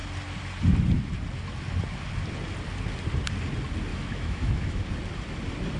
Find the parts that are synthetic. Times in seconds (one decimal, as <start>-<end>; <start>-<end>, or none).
3.9-4.9